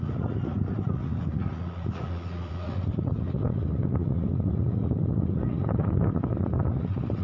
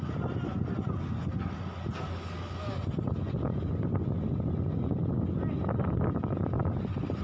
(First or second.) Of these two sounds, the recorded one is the second